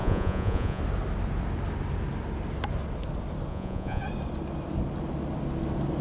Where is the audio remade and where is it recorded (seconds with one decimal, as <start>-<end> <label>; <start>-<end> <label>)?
0.0-0.8 remade; 0.8-3.5 recorded; 3.5-4.0 remade; 4.0-6.0 recorded